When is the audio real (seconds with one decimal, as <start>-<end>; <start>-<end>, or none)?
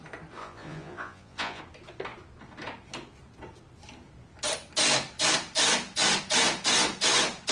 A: 0.0-0.4; 1.6-7.5